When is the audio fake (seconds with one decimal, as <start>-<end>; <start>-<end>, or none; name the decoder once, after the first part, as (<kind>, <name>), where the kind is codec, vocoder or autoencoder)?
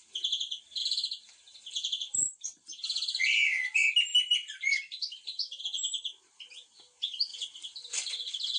0.8-3.2 (vocoder, BigVGAN v2); 4.1-5.6; 7.3-8.1